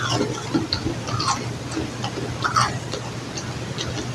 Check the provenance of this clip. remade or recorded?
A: recorded